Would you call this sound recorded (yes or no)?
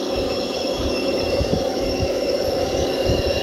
no